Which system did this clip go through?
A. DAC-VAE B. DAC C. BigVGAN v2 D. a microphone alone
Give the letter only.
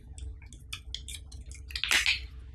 D